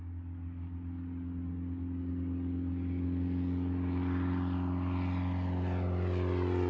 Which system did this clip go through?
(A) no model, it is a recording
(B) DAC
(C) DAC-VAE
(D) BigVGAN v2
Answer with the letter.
A